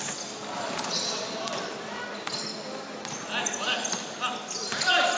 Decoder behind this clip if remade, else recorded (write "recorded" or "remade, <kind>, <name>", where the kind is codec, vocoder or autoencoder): recorded